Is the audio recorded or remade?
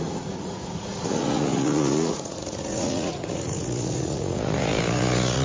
remade